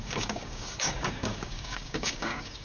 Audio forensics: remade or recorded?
remade